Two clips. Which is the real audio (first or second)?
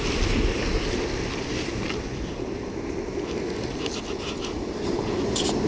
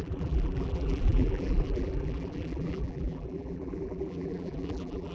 first